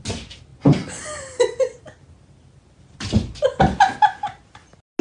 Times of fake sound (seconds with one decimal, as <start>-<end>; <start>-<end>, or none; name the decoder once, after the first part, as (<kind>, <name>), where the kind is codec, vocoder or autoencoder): none